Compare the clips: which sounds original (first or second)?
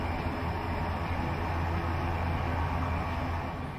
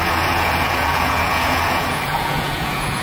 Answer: first